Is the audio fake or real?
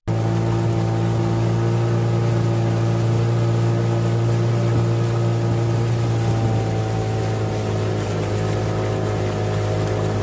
real